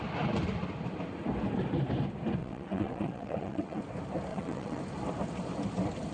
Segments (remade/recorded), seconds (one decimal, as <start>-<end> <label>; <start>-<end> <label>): 0.0-2.4 recorded; 2.4-3.8 remade; 3.8-4.3 recorded; 4.3-4.8 remade; 4.8-6.1 recorded